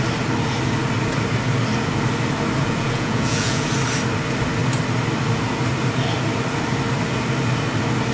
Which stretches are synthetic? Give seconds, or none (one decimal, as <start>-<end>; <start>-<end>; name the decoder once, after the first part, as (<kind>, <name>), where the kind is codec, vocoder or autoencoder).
2.6-3.7 (vocoder, Vocos)